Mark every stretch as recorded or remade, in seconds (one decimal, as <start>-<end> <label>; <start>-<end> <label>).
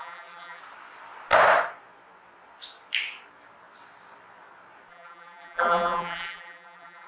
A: 0.0-0.6 remade; 0.6-4.9 recorded; 4.9-7.1 remade